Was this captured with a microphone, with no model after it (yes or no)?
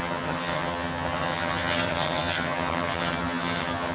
no